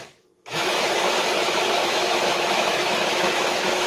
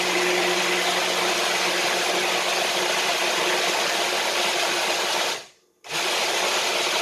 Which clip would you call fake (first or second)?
first